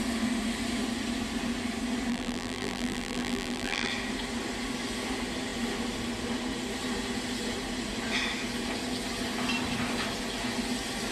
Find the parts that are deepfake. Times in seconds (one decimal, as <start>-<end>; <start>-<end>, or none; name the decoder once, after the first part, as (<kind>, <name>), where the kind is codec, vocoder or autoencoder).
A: 2.1-3.9 (vocoder, BigVGAN v2)